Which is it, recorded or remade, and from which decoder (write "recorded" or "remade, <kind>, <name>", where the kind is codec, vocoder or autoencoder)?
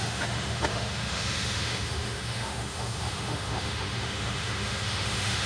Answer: remade, autoencoder, DAC-VAE